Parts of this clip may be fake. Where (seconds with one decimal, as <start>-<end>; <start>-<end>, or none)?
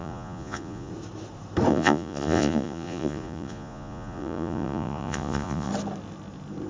0.0-0.9; 1.7-5.7